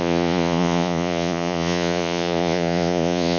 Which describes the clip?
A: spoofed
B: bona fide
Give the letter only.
A